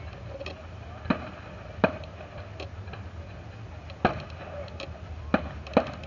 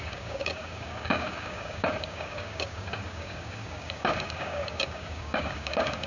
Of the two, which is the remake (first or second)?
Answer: second